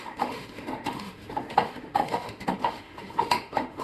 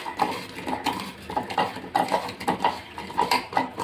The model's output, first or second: first